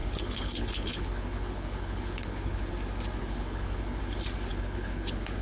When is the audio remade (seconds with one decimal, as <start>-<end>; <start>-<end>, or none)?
0.0-2.7; 3.2-4.0; 4.5-5.4